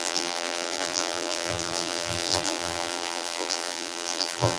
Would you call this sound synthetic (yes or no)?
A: yes